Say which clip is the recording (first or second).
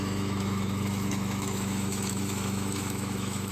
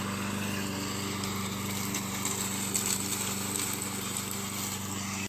second